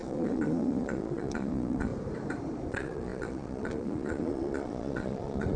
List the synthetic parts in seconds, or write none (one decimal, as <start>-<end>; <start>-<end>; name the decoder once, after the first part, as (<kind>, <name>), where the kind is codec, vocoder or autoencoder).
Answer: 0.0-1.9 (vocoder, Vocos); 2.7-5.6